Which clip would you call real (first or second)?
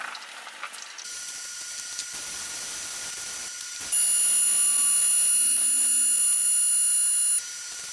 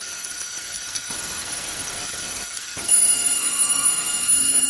first